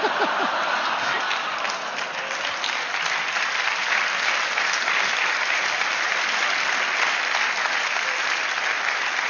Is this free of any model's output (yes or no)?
yes